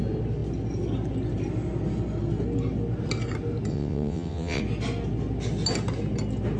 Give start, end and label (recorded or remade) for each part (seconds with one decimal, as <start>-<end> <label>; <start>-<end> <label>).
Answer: 0.0-3.7 recorded; 3.7-4.6 remade; 4.6-6.6 recorded